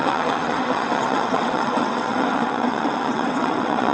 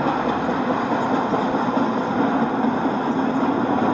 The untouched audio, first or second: second